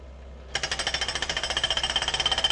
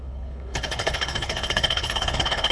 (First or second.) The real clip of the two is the first